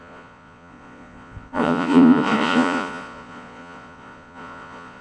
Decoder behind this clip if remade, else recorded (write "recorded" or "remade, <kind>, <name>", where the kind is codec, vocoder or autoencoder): remade, vocoder, Vocos